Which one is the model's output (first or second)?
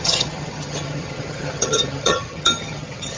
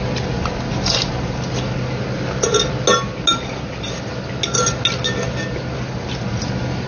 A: first